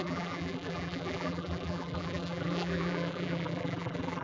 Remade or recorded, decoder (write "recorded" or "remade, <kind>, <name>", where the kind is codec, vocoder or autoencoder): remade, vocoder, BigVGAN v2